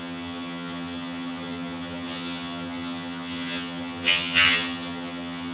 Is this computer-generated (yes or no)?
yes